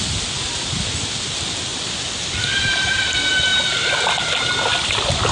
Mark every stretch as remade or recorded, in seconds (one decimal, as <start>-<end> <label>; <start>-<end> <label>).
0.0-5.3 recorded